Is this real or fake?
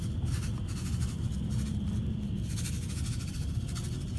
real